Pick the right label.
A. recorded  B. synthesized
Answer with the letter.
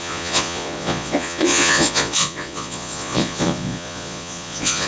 B